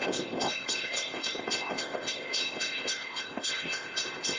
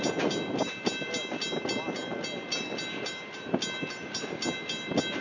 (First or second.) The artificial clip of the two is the first